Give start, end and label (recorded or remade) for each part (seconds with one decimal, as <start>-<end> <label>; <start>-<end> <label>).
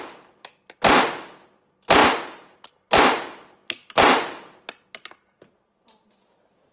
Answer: 0.0-6.7 recorded